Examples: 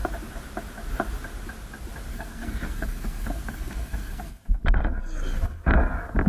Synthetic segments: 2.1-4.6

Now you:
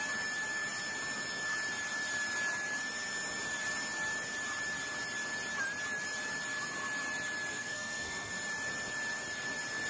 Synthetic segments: 7.5-8.3